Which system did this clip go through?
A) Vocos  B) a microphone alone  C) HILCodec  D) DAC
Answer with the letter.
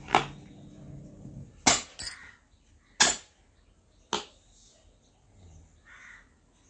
B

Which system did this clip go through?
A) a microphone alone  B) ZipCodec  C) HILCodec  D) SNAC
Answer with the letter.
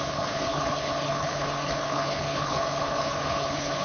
C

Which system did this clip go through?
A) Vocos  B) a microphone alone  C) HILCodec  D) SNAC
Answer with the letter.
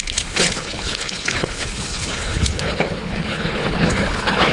C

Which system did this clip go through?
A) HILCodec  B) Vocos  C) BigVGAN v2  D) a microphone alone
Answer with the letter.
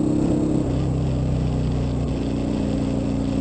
D